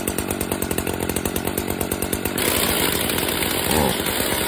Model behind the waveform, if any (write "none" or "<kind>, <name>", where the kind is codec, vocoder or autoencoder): none